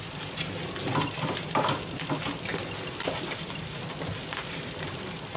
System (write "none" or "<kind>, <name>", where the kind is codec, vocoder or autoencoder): none